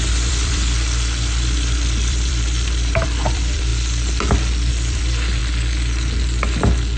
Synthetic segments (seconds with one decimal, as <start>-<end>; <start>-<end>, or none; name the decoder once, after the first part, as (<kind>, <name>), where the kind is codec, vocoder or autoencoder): 0.0-3.7 (vocoder, BigVGAN v2); 4.7-5.4